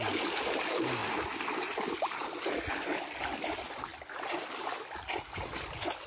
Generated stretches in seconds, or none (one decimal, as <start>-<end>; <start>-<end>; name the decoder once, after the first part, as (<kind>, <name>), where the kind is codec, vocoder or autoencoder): none